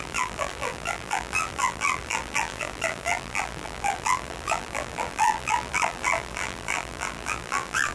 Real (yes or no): no